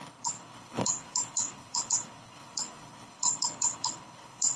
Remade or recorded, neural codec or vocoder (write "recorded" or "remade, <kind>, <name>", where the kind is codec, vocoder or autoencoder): remade, codec, HILCodec